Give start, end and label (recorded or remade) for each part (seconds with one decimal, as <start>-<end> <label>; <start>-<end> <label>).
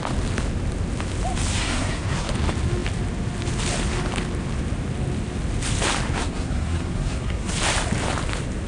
0.0-1.6 recorded; 1.6-2.3 remade; 2.3-6.2 recorded; 6.2-7.5 remade; 7.5-8.7 recorded